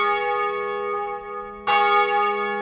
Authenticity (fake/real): real